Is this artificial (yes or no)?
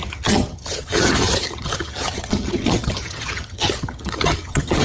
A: yes